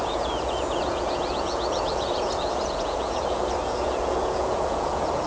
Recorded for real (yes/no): no